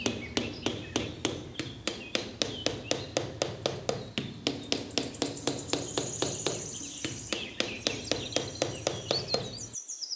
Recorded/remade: recorded